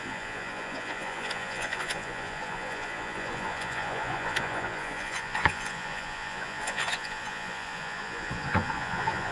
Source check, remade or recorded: remade